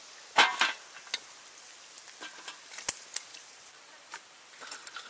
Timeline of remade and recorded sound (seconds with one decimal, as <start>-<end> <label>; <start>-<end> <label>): 0.0-3.3 recorded; 3.3-4.5 remade; 4.5-5.1 recorded